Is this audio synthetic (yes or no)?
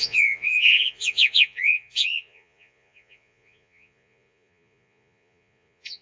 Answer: yes